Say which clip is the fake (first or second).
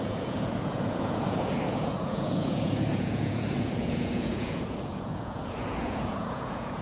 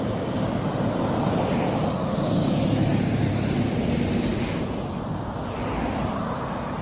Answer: first